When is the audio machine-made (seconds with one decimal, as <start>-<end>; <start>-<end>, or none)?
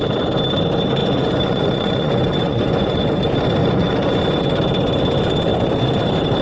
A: 1.0-3.2; 3.6-4.1